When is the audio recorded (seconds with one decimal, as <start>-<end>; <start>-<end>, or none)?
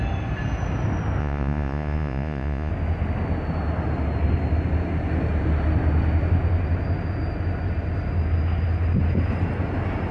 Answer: 0.0-1.2; 2.7-10.1